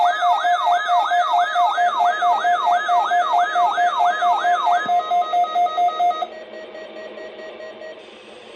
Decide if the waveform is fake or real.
real